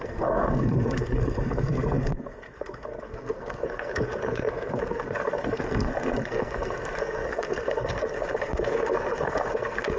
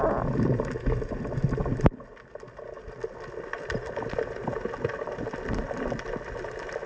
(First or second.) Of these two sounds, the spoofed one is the first